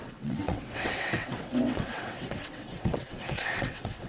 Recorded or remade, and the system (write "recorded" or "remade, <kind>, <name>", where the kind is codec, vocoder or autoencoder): remade, vocoder, WaveNeXt